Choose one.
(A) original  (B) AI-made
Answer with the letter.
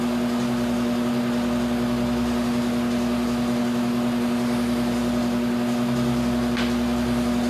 A